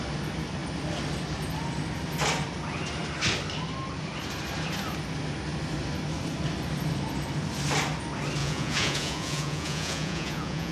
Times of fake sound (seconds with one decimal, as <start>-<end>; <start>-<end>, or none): 8.4-10.7